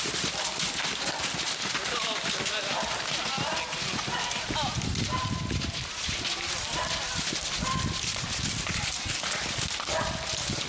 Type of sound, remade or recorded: recorded